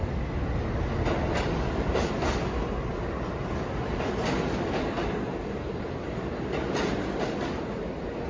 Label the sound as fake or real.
real